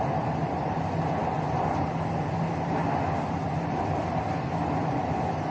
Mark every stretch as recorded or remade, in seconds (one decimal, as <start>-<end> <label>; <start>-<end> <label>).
0.0-5.5 recorded